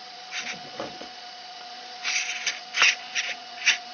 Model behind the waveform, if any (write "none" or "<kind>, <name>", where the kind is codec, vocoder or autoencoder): vocoder, Vocos